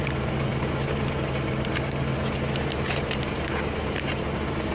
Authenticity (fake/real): fake